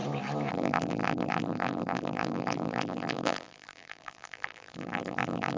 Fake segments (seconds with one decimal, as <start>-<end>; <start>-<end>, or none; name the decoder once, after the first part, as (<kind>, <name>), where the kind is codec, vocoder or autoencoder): 0.5-5.6 (vocoder, BigVGAN v2)